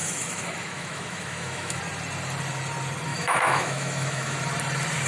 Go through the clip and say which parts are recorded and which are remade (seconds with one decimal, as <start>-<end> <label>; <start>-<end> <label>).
0.0-1.8 remade; 1.8-3.1 recorded; 3.1-4.4 remade; 4.4-5.1 recorded